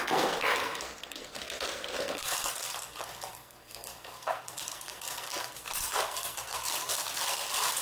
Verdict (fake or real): fake